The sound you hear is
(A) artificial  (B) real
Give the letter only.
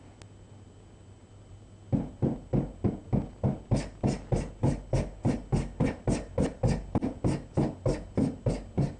B